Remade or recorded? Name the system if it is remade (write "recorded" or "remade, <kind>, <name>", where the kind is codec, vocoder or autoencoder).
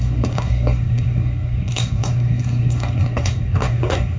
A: remade, codec, SNAC